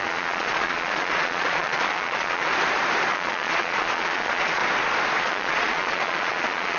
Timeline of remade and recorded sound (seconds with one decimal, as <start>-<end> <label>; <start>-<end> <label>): 0.0-2.5 remade; 2.5-3.1 recorded; 3.1-4.6 remade; 4.6-5.2 recorded; 5.2-6.8 remade